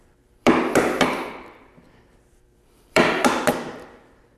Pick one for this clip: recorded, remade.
remade